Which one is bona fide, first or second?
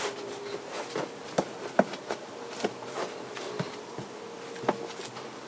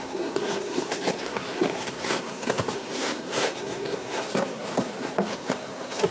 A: first